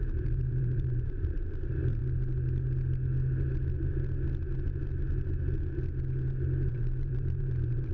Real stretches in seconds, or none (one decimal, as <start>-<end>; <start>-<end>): 2.0-6.7